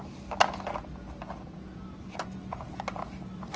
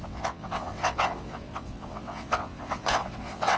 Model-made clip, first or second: second